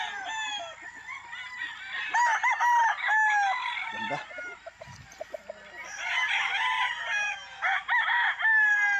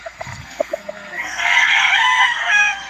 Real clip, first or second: first